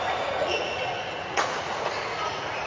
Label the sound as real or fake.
fake